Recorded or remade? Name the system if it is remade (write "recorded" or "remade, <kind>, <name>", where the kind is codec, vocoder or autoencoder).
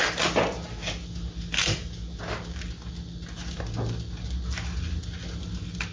recorded